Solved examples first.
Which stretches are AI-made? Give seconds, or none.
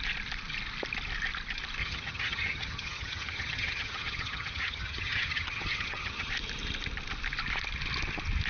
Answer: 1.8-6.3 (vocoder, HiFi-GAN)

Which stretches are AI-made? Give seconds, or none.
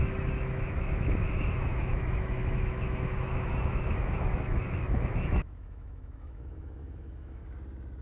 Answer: 0.0-7.4 (autoencoder, DAC-VAE)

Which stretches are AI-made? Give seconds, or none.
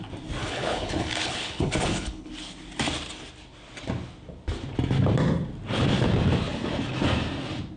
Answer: 0.4-2.3 (codec, HILCodec)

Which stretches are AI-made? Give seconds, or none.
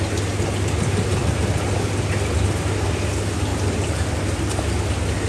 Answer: 3.5-4.4 (vocoder, BigVGAN v2)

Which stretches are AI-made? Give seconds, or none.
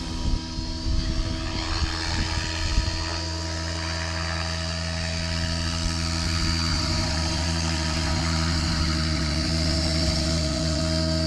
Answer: 6.7-10.8 (vocoder, Vocos)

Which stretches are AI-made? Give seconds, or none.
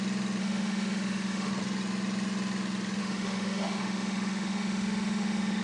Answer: 0.4-1.5 (autoencoder, DAC-VAE); 3.0-5.6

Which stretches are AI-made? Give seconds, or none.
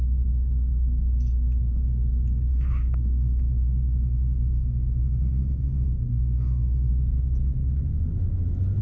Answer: 2.5-6.9 (autoencoder, DAC-VAE)